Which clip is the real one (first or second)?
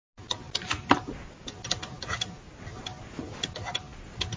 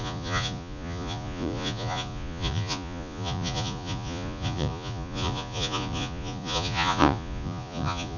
first